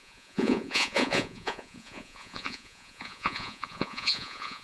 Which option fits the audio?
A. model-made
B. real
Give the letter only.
A